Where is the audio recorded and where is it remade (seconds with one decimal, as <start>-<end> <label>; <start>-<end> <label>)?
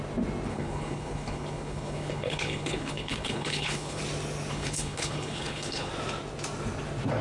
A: 0.0-0.5 recorded; 0.5-4.0 remade; 4.0-4.5 recorded; 4.5-5.9 remade; 5.9-7.2 recorded